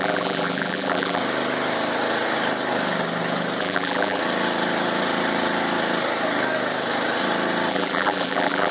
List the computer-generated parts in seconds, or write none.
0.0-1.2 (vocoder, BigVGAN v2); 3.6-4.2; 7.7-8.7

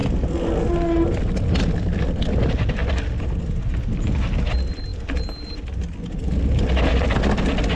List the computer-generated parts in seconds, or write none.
none